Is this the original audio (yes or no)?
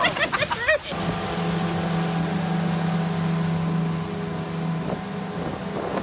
yes